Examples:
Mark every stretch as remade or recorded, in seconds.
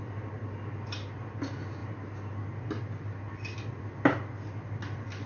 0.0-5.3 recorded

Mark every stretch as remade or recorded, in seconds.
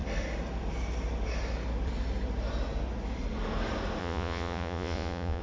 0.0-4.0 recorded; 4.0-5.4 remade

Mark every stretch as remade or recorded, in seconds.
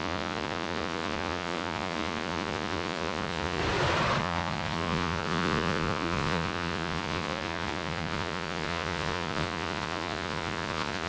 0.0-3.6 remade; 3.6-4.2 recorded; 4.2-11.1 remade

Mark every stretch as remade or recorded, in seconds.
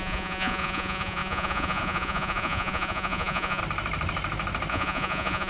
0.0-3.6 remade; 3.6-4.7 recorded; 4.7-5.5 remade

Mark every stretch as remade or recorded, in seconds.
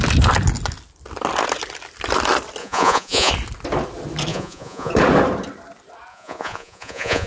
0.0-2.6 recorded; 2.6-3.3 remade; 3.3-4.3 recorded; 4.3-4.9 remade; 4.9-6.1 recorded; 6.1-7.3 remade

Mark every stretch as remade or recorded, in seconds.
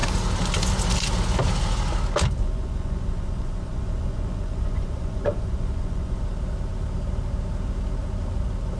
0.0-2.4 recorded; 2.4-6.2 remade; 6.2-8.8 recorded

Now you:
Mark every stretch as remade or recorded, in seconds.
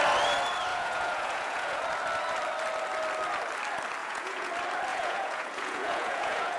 0.0-0.7 recorded; 0.7-1.8 remade; 1.8-4.0 recorded; 4.0-4.5 remade; 4.5-4.9 recorded; 4.9-6.6 remade